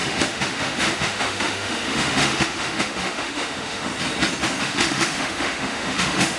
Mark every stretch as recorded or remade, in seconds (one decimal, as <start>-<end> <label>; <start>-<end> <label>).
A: 0.0-3.9 remade; 3.9-4.6 recorded; 4.6-6.4 remade

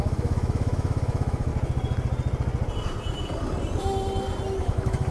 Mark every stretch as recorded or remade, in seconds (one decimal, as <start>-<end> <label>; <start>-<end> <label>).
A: 0.0-1.5 remade; 1.5-4.6 recorded; 4.6-5.1 remade

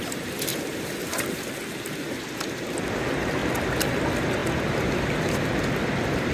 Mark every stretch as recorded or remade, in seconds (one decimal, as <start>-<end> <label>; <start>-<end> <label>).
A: 0.0-6.3 recorded

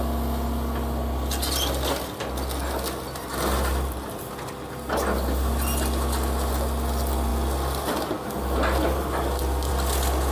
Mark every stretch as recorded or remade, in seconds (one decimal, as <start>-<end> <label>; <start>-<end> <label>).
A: 0.0-10.3 recorded

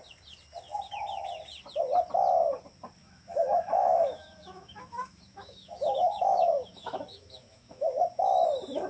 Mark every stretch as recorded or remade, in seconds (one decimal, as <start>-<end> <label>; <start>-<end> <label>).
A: 0.0-3.0 recorded; 3.0-8.0 remade; 8.0-8.9 recorded

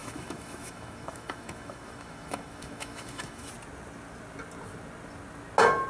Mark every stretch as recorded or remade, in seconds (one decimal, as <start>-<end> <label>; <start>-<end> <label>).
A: 0.0-3.5 remade; 3.5-5.9 recorded